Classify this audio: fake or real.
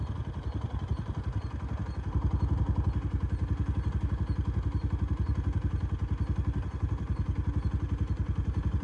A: real